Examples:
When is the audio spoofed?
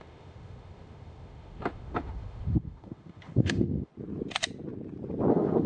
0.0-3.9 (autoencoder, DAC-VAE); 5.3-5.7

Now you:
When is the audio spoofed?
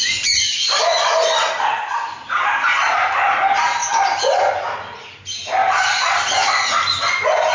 none